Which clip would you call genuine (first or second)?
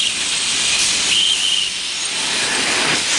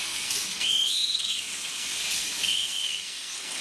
first